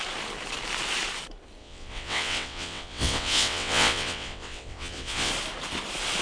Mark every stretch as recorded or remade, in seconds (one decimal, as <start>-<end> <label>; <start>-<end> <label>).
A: 0.0-1.6 recorded; 1.6-5.3 remade; 5.3-6.2 recorded